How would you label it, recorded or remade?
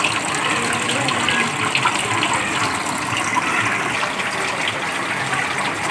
recorded